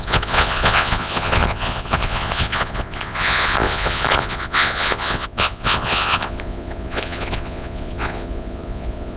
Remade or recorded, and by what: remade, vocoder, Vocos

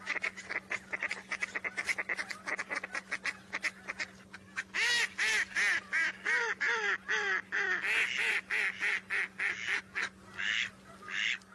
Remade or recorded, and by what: recorded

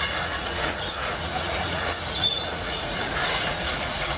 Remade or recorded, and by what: remade, vocoder, Vocos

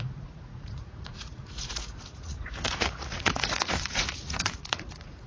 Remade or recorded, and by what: remade, vocoder, Vocos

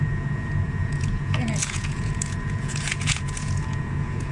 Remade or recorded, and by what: remade, vocoder, Vocos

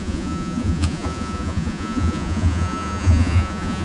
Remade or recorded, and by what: remade, vocoder, Vocos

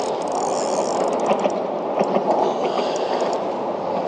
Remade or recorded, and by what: recorded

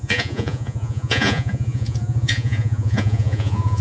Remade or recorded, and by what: remade, vocoder, Vocos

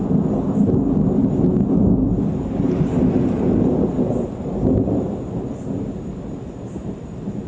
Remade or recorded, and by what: recorded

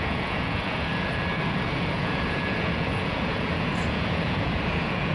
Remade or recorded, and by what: remade, vocoder, Vocos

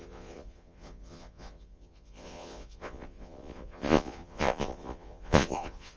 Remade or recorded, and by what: remade, vocoder, Vocos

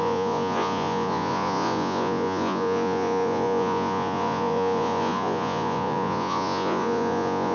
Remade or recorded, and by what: remade, vocoder, Vocos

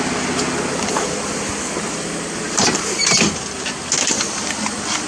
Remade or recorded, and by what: recorded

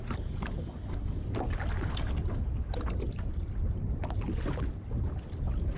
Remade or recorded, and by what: recorded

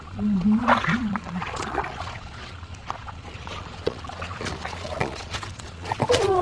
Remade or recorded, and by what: remade, vocoder, Vocos